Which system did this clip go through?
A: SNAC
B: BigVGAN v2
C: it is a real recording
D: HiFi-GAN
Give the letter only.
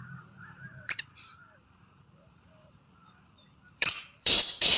B